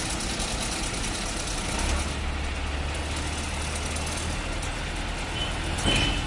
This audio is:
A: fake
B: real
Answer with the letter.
B